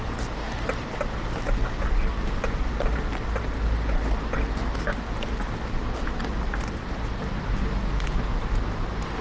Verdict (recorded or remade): recorded